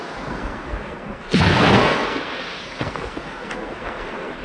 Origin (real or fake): fake